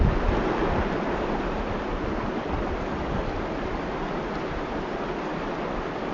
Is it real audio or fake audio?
real